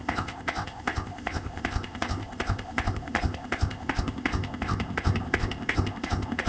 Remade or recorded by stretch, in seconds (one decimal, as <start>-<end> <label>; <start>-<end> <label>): 0.0-6.5 remade